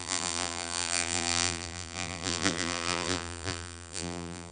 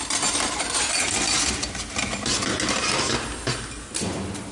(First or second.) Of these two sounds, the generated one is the first